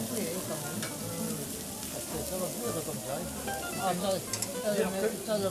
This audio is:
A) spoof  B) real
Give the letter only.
B